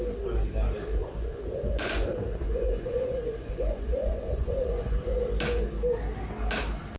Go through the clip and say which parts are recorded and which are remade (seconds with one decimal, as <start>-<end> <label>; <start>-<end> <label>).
0.0-1.0 recorded; 1.0-5.2 remade; 5.2-7.0 recorded